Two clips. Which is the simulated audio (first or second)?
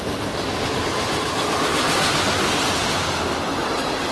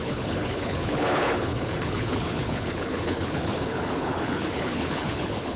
second